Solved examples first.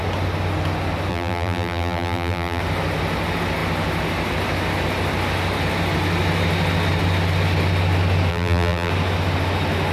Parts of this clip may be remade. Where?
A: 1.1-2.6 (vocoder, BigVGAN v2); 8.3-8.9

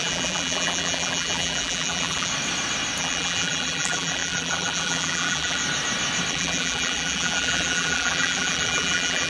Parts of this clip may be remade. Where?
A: 0.0-2.3 (vocoder, BigVGAN v2); 3.0-5.6; 6.3-9.3

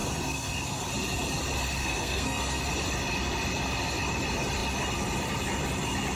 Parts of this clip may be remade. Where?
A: 0.0-0.8 (codec, SNAC); 1.8-2.6

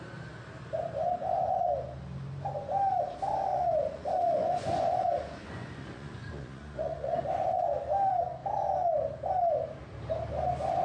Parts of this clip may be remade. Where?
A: 3.5-7.2 (vocoder, Vocos)